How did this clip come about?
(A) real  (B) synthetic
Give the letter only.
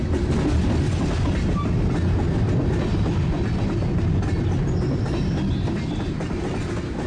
A